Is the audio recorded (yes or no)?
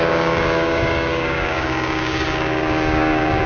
no